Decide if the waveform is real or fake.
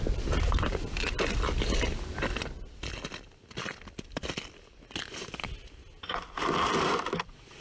real